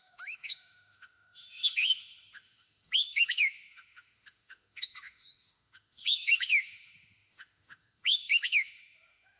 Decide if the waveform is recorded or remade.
remade